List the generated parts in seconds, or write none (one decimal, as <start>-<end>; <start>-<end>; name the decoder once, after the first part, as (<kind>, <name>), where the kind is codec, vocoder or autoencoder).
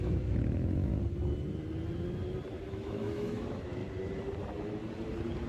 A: 0.0-0.9 (autoencoder, DAC-VAE); 2.7-3.8